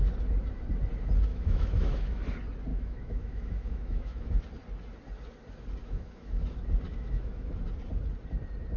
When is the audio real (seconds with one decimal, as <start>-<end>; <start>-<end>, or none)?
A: 0.0-1.3; 2.2-2.7; 4.4-5.8; 6.4-6.9; 7.5-8.8